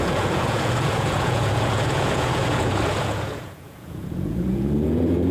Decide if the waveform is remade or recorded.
remade